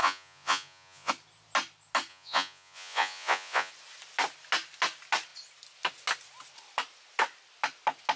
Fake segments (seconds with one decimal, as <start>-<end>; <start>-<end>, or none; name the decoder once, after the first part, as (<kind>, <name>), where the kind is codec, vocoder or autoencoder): 0.0-1.1 (vocoder, Vocos); 2.1-3.7